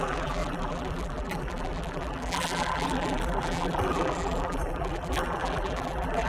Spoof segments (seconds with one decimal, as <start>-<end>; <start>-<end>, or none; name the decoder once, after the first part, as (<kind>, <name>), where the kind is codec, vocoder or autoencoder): 0.0-6.3 (vocoder, BigVGAN v2)